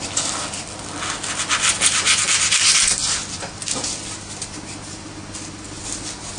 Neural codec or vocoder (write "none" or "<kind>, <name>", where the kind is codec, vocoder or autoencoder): none